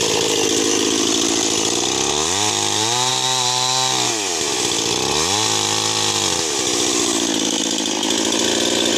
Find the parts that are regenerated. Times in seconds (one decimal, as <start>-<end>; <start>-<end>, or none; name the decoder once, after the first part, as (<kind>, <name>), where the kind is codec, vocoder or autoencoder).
none